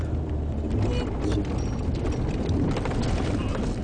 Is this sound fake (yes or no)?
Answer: no